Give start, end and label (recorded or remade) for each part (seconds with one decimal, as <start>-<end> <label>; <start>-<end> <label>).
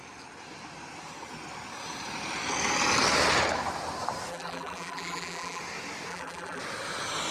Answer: 0.0-4.3 recorded; 4.3-5.6 remade; 5.6-6.1 recorded; 6.1-6.6 remade; 6.6-7.3 recorded